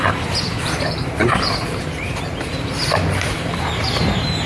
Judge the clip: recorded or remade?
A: remade